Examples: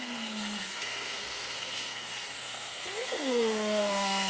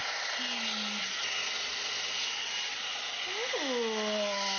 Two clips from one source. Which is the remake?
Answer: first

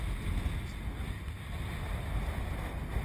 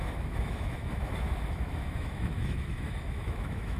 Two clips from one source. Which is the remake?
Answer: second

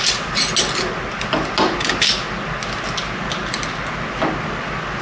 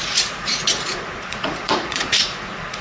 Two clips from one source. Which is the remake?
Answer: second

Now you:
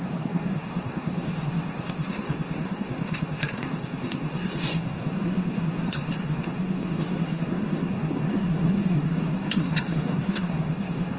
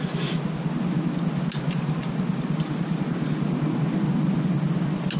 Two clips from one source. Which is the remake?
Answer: first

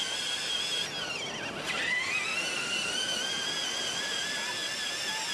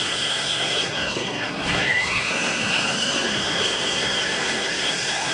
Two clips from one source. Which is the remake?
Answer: second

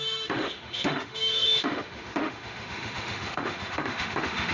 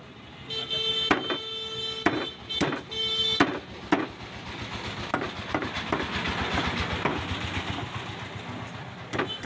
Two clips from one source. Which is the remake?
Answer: first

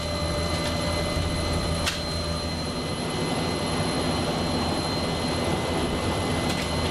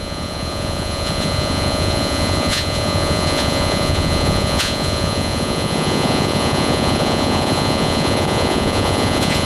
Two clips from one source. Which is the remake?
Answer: second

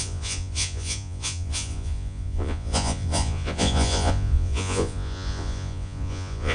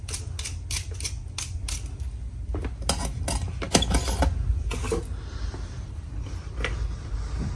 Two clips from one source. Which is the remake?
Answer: first